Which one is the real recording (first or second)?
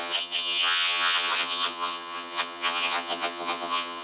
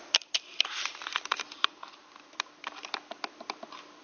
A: second